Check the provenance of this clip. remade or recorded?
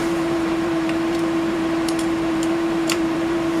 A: remade